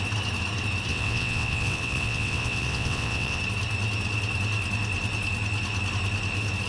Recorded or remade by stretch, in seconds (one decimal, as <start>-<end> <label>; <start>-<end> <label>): 0.0-0.9 recorded; 0.9-3.4 remade; 3.4-6.7 recorded